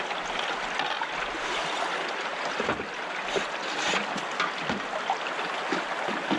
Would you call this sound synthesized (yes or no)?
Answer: no